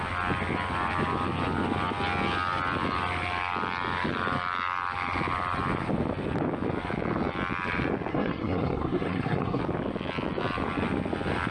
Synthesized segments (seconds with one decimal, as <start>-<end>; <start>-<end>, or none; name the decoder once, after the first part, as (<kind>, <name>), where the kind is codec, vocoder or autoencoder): 8.1-9.6 (codec, SNAC)